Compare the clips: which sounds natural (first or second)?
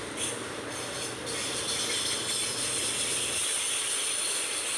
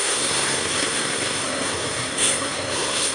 first